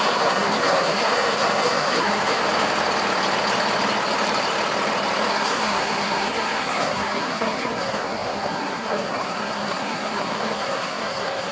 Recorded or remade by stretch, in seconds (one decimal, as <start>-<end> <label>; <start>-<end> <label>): 0.0-2.4 remade; 2.4-5.3 recorded; 5.3-11.5 remade